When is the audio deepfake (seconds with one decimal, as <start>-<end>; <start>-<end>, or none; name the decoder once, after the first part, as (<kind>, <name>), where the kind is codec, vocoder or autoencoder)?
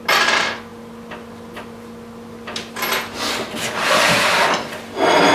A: none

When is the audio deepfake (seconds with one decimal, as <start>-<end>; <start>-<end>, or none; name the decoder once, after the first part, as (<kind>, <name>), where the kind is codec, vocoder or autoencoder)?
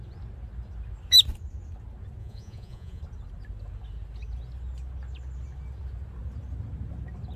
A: 2.2-3.0 (vocoder, Vocos)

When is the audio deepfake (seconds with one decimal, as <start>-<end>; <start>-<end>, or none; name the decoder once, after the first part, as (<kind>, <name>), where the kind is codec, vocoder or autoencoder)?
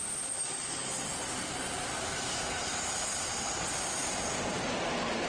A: none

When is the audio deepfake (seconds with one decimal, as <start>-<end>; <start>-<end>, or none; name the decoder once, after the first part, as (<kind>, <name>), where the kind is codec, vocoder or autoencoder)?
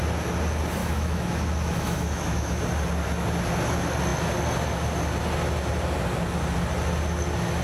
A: 0.8-2.6 (autoencoder, DAC-VAE)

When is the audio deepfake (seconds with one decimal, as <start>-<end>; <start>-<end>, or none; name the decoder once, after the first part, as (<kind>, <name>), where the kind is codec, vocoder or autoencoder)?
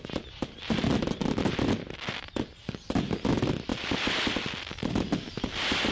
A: none